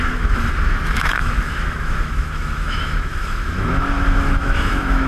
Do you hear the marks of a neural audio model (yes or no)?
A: yes